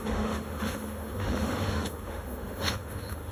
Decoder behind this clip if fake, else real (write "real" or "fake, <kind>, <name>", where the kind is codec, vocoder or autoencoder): fake, autoencoder, DAC-VAE